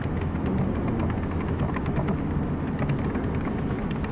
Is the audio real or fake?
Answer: real